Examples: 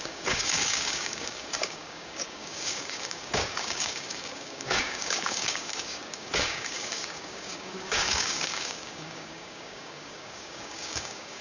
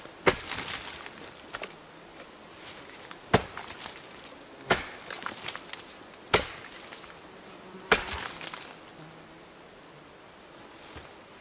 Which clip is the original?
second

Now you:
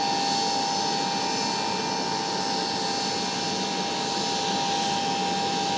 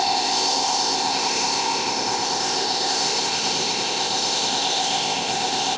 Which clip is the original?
first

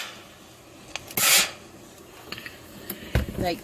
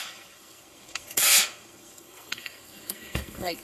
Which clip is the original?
first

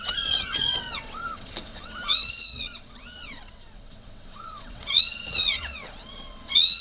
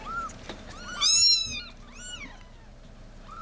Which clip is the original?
second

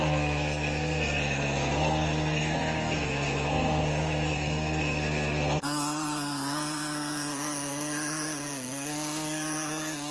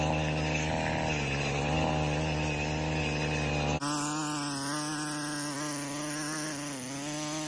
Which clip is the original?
second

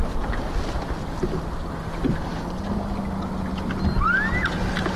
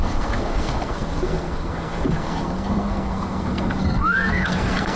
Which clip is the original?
first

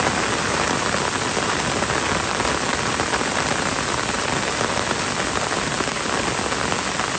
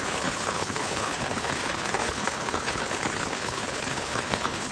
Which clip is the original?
first